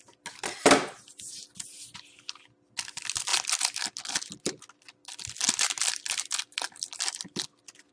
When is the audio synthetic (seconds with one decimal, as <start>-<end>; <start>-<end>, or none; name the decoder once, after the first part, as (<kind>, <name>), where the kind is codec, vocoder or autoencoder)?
none